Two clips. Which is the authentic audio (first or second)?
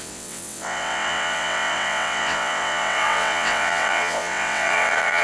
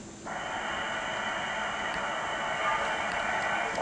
second